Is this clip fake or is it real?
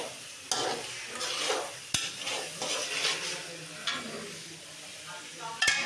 real